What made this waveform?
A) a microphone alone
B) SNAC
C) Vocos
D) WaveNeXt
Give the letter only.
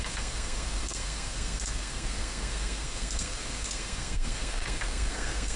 B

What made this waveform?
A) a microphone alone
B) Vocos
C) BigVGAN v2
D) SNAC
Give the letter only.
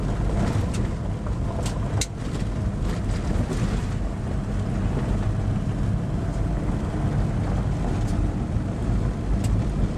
A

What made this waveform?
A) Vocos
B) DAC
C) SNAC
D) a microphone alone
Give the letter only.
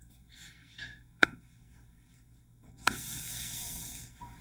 C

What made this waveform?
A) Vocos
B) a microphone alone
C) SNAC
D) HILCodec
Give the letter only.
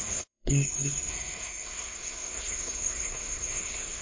C